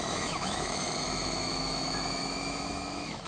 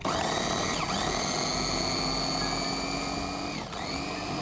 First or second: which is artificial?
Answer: first